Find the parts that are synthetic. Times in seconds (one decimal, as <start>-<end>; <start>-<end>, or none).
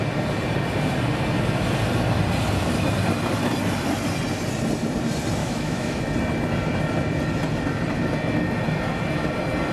5.4-6.0